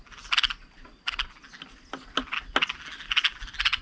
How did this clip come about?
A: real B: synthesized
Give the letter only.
A